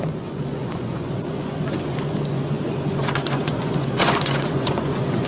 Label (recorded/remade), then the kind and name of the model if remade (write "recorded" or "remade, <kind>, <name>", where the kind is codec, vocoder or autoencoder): remade, vocoder, Vocos